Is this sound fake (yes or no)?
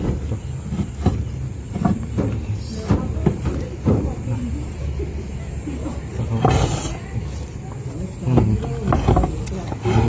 no